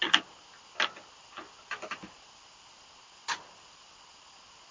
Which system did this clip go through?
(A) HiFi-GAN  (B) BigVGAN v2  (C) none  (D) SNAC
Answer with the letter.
C